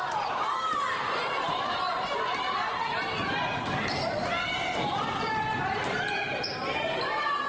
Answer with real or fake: fake